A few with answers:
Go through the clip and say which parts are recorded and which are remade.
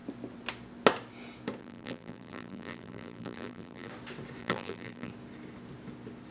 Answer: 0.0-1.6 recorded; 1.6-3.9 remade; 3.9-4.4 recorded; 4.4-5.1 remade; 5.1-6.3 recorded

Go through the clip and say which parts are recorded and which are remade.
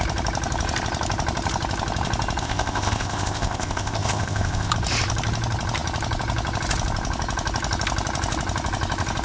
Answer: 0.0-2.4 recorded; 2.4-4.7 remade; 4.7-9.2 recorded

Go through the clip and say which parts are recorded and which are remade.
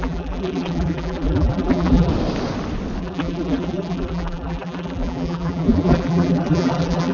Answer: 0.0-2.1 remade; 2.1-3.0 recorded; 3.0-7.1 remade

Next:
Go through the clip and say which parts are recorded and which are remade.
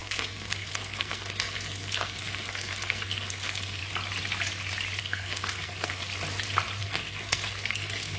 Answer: 0.0-3.8 remade; 3.8-5.0 recorded; 5.0-6.0 remade; 6.0-6.8 recorded; 6.8-8.2 remade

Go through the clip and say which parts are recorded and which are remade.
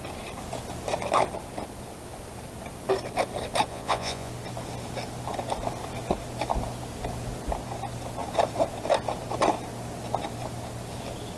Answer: 0.0-3.7 recorded; 3.7-4.3 remade; 4.3-11.4 recorded